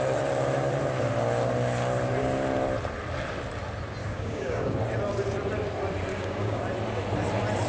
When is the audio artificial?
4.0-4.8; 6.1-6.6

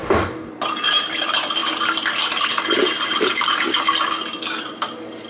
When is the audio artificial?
0.0-0.5

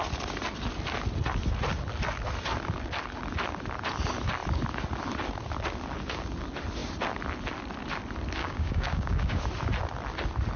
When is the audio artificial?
8.4-9.4

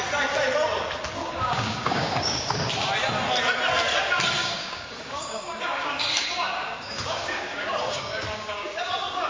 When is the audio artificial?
1.2-2.7; 4.4-8.9